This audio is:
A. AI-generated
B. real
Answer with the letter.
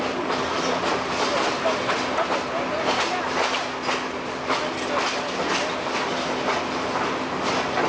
B